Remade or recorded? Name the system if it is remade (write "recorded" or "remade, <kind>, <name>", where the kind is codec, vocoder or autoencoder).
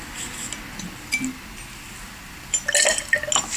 recorded